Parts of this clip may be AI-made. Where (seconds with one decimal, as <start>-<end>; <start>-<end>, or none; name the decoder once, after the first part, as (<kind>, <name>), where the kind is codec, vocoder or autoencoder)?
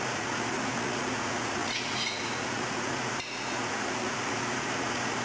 0.0-5.2 (vocoder, Vocos)